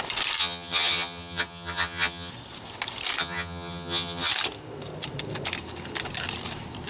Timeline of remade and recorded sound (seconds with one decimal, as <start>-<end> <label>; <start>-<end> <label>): 0.0-0.4 recorded; 0.4-2.3 remade; 2.3-3.2 recorded; 3.2-4.3 remade; 4.3-6.9 recorded